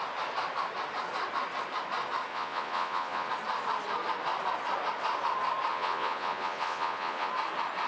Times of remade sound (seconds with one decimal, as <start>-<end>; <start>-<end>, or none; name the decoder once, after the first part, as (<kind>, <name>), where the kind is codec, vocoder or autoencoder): 2.3-3.3 (vocoder, Vocos); 5.7-7.3